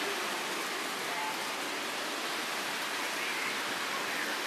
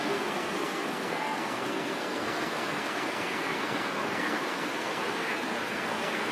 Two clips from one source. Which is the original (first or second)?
first